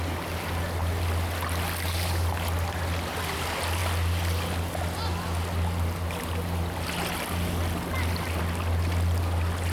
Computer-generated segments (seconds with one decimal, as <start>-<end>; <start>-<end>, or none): none

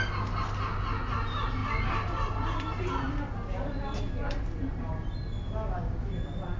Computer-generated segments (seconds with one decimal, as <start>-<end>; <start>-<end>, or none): none

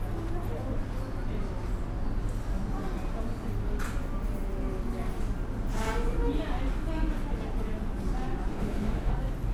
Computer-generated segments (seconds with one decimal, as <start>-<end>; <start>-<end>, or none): 8.5-9.1